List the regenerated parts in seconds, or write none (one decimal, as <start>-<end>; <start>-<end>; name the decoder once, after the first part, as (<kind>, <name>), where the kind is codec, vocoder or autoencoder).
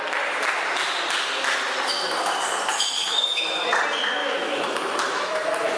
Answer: 2.7-3.6 (autoencoder, DAC-VAE); 4.2-5.8